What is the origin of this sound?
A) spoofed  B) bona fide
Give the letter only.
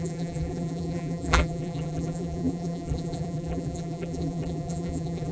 A